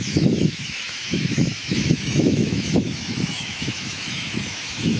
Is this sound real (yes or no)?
no